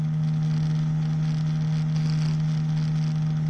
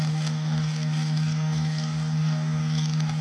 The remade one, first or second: second